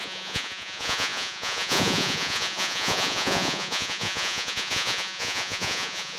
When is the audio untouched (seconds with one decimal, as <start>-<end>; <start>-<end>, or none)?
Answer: none